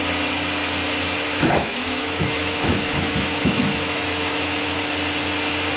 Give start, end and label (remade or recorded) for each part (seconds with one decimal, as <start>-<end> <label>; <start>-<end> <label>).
0.0-1.3 recorded; 1.3-4.8 remade; 4.8-5.8 recorded